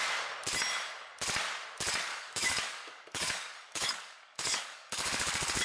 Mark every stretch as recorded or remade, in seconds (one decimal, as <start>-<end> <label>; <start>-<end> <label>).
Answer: 0.0-2.1 recorded; 2.1-5.6 remade